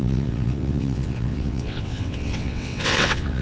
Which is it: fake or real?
fake